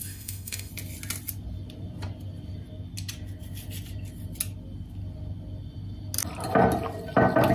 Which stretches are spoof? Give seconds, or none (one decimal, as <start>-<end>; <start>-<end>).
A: 0.0-0.7